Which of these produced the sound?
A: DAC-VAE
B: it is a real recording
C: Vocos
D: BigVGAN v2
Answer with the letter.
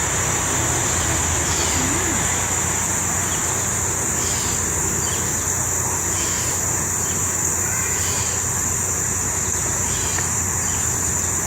B